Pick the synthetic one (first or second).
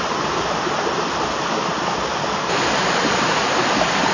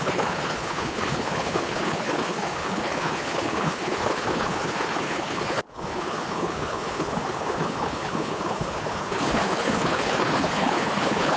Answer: second